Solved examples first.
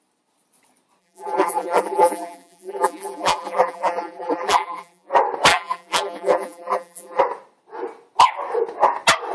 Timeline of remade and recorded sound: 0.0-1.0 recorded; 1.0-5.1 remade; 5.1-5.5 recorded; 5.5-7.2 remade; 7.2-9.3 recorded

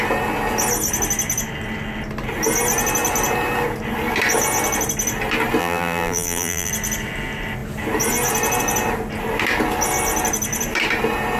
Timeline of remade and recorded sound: 0.0-5.6 recorded; 5.6-6.7 remade; 6.7-11.4 recorded